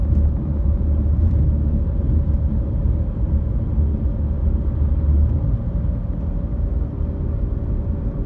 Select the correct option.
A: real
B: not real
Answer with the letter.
A